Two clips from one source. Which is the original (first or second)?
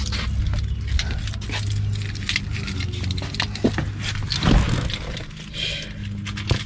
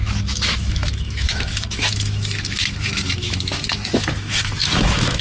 first